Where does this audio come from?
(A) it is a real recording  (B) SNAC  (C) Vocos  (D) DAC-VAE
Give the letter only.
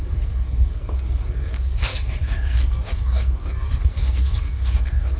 B